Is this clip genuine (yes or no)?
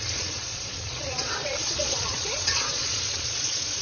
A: no